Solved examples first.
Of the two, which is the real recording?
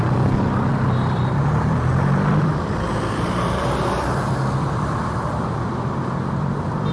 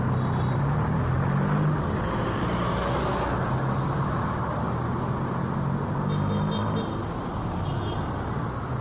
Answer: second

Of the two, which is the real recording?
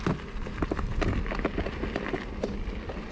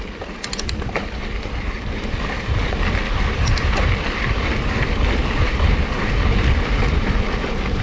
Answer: first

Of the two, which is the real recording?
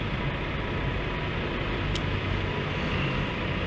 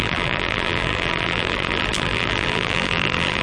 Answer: first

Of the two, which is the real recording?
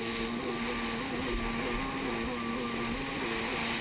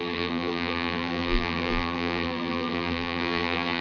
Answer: first